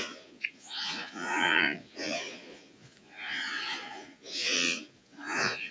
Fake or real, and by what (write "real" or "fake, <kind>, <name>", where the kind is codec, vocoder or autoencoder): fake, vocoder, Vocos